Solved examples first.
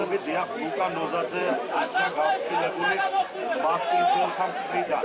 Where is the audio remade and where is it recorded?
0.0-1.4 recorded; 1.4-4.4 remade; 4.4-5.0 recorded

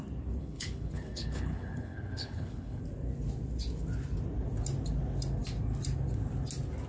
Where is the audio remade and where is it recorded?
0.0-0.4 recorded; 0.4-2.8 remade; 2.8-6.9 recorded

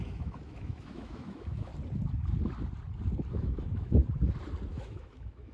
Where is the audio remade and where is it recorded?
0.0-1.7 remade; 1.7-3.3 recorded; 3.3-4.0 remade; 4.0-4.7 recorded; 4.7-5.5 remade

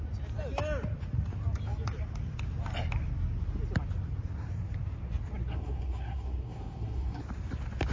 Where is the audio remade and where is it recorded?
0.0-5.5 recorded; 5.5-7.2 remade; 7.2-7.9 recorded

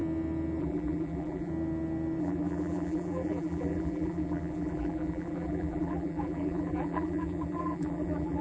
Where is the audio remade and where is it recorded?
0.0-0.6 recorded; 0.6-1.5 remade; 1.5-2.2 recorded; 2.2-8.4 remade

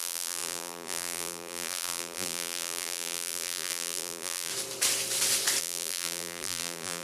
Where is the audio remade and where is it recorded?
0.0-4.5 remade; 4.5-5.6 recorded; 5.6-7.0 remade

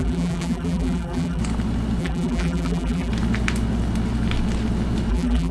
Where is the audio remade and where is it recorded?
0.0-1.4 remade; 1.4-2.0 recorded; 2.0-3.1 remade; 3.1-5.1 recorded; 5.1-5.5 remade

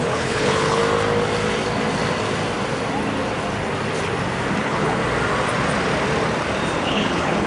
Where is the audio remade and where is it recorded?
0.0-0.8 remade; 0.8-4.6 recorded; 4.6-5.0 remade; 5.0-6.8 recorded; 6.8-7.5 remade